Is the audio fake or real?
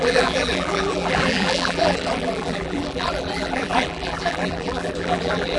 fake